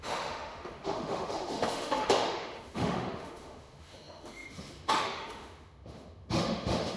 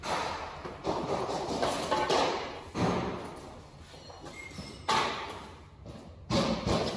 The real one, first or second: second